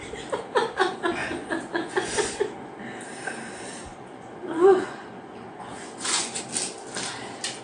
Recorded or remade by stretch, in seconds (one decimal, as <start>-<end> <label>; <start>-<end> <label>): 0.0-1.2 recorded; 1.2-2.8 remade; 2.8-3.9 recorded; 3.9-6.4 remade; 6.4-7.6 recorded